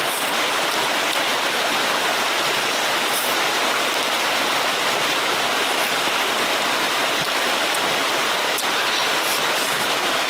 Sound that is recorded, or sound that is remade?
recorded